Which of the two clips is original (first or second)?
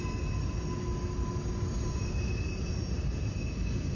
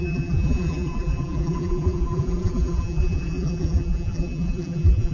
first